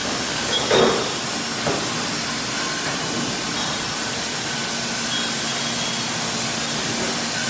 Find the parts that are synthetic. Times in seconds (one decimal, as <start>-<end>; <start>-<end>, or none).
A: 0.0-0.8